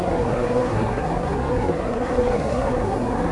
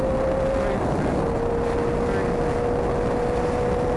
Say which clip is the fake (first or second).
first